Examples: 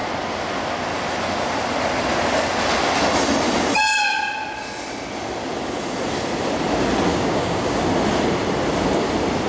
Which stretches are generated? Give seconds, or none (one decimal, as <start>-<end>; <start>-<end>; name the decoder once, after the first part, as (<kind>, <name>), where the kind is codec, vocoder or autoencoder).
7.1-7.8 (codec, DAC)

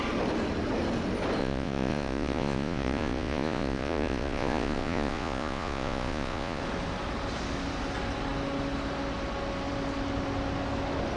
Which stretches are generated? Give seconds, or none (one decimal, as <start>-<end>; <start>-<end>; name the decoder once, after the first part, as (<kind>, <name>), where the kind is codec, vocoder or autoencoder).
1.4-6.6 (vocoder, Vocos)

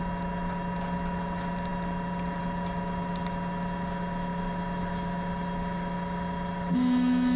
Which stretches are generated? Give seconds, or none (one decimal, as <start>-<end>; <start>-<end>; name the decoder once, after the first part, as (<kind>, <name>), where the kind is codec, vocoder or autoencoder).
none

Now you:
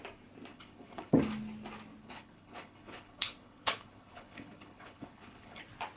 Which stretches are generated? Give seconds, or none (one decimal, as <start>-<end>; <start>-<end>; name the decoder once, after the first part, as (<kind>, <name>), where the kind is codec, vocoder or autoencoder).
0.5-1.1 (codec, HILCodec); 2.0-5.6

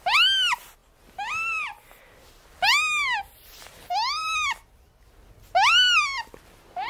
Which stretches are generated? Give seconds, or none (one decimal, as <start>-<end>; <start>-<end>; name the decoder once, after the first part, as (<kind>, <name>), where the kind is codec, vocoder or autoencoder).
none

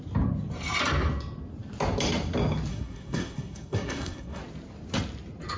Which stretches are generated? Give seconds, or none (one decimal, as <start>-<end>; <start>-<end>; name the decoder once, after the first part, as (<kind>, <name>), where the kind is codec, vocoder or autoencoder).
2.7-4.4 (codec, SNAC)